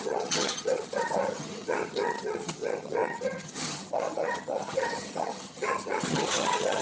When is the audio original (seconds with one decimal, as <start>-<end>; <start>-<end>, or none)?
none